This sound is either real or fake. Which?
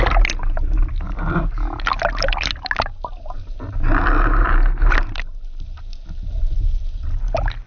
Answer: real